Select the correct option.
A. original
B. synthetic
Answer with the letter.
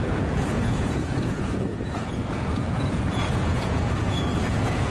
B